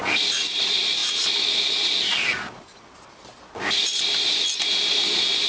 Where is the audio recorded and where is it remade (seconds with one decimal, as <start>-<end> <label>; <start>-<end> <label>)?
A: 0.0-5.5 recorded